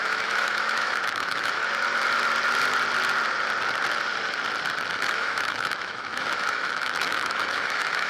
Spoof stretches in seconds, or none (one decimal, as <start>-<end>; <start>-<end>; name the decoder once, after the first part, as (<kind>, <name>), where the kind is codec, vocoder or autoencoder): 0.0-1.6 (autoencoder, DAC-VAE); 4.9-8.1